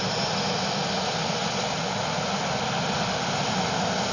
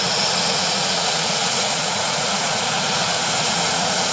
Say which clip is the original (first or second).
first